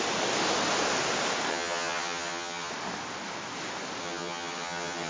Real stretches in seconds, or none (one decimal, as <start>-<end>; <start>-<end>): 0.0-1.5; 2.7-4.0